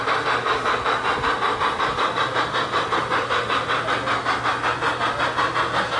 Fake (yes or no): no